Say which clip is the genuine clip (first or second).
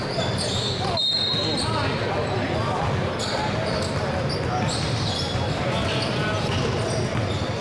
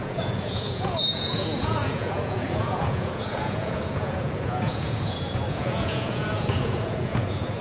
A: first